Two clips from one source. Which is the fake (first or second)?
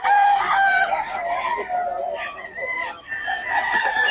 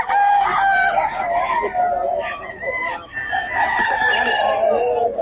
first